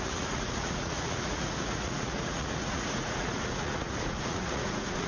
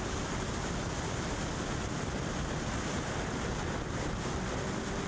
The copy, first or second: first